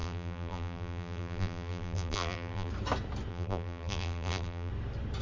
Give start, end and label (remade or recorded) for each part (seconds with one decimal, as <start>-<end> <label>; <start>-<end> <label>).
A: 0.0-2.7 remade; 2.7-3.3 recorded; 3.3-4.7 remade; 4.7-5.2 recorded